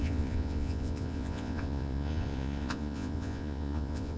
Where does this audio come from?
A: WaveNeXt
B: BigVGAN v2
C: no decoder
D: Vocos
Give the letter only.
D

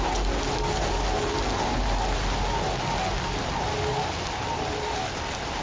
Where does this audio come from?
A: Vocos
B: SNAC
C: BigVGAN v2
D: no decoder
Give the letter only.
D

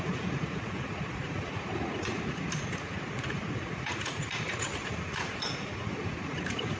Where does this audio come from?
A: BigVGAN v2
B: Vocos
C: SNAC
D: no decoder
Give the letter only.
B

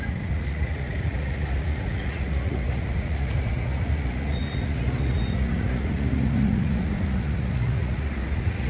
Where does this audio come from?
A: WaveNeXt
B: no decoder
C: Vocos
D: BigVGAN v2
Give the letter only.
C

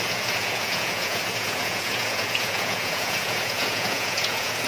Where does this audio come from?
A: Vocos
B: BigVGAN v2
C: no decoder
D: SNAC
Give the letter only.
A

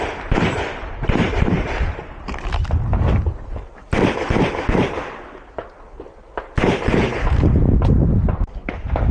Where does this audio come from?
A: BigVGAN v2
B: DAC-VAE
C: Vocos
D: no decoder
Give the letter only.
D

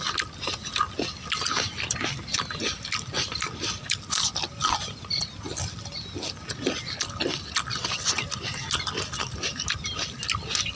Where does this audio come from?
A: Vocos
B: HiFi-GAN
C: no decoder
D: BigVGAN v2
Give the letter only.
C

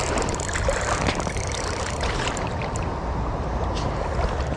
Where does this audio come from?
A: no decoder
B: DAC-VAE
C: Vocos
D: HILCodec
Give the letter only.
A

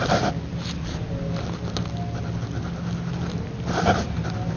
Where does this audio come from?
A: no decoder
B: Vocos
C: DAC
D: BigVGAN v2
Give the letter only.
A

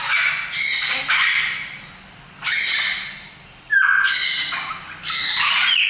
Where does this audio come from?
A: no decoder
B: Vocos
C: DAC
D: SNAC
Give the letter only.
A